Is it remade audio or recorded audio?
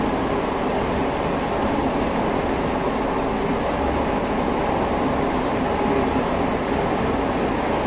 recorded